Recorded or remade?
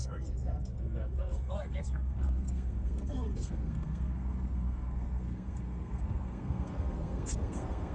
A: remade